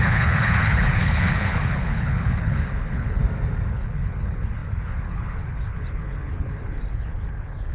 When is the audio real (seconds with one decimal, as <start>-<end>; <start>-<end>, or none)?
3.2-3.7